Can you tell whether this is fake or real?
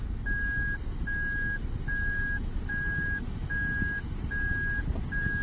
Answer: real